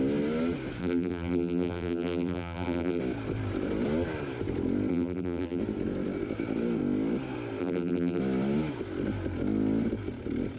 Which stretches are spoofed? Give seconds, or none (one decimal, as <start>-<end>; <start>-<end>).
0.8-3.0; 4.9-5.6; 7.6-8.2